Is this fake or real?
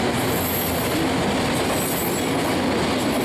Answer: real